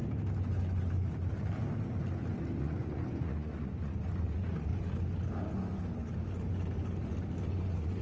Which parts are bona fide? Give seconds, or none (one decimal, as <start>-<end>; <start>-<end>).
0.0-2.6; 4.7-7.6